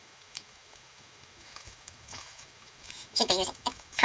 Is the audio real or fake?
fake